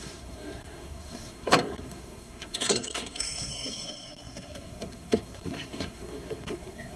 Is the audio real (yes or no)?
no